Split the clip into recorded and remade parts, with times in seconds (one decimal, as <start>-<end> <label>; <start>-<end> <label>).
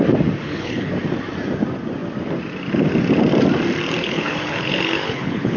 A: 0.0-0.4 recorded; 0.4-0.9 remade; 0.9-4.0 recorded; 4.0-5.6 remade